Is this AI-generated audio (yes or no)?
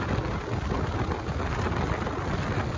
no